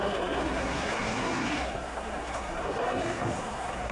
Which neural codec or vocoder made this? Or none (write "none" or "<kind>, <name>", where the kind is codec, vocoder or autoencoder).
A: codec, SNAC